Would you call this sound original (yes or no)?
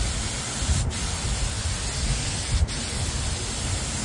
yes